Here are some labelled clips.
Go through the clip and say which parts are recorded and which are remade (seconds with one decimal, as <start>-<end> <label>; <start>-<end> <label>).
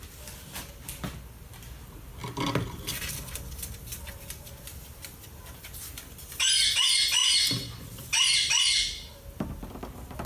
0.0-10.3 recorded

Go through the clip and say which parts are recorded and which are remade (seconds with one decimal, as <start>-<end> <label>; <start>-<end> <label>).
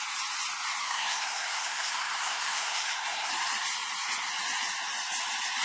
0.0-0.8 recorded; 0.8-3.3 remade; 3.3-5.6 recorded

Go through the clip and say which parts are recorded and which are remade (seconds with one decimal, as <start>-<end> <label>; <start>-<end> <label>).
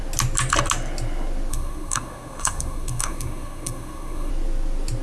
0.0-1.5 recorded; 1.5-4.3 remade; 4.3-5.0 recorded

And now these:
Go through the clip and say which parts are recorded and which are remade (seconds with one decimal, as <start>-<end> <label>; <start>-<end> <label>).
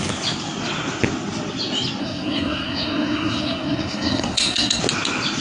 0.0-2.0 recorded; 2.0-4.8 remade; 4.8-5.4 recorded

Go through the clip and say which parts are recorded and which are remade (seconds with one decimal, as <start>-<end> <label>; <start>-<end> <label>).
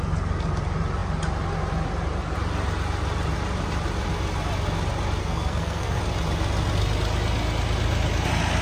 0.0-5.2 recorded; 5.2-6.0 remade; 6.0-8.6 recorded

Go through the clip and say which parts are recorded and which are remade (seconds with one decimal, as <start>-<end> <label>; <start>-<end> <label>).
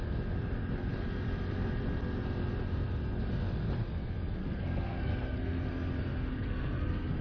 0.0-4.4 recorded; 4.4-5.7 remade; 5.7-6.3 recorded; 6.3-7.2 remade